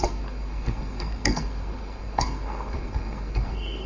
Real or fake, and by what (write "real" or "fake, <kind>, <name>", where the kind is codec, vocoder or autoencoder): fake, codec, SNAC